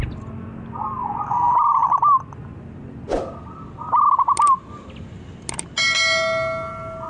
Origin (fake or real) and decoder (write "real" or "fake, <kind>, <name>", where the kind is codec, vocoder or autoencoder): real